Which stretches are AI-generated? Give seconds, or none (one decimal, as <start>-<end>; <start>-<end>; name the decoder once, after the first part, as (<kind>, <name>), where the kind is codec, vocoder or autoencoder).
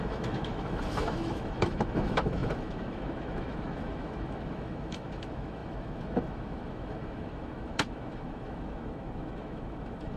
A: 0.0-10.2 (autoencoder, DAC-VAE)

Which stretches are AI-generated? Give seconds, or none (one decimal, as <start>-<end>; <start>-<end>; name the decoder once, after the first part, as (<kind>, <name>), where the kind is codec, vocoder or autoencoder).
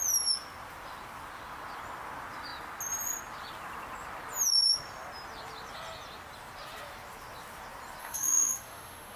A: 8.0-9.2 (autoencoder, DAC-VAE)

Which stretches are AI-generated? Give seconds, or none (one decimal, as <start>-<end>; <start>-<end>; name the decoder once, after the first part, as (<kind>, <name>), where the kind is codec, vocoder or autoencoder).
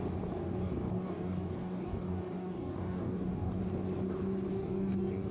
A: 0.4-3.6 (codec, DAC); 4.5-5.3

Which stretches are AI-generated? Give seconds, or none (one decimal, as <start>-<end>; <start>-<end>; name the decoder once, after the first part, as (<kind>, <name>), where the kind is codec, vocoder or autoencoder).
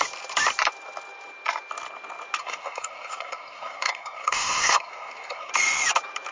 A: 2.4-5.5 (codec, SNAC)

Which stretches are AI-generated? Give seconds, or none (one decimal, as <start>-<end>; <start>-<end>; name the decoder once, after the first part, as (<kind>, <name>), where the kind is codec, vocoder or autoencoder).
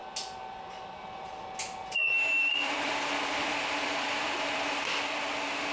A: 0.0-1.3 (vocoder, BigVGAN v2); 1.8-5.2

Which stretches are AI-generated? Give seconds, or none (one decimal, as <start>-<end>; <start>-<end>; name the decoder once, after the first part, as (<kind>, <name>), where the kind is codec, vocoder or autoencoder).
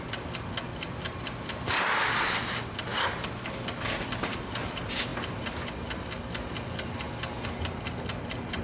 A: 0.7-1.6 (vocoder, BigVGAN v2)